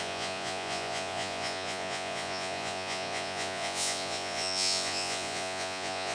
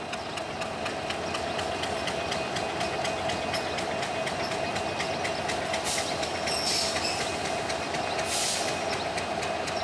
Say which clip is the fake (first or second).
first